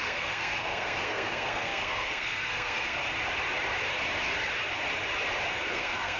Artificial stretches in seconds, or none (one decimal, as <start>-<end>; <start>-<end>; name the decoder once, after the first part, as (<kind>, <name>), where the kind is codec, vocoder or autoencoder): 0.0-3.0 (codec, SNAC); 5.5-6.2